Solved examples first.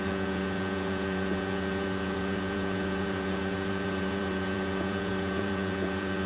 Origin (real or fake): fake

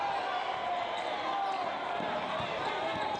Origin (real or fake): real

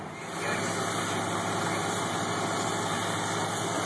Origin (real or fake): real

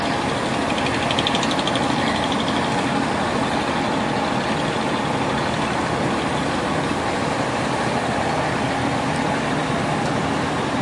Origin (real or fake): real